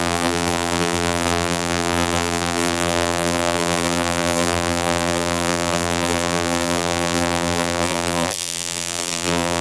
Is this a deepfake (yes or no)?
yes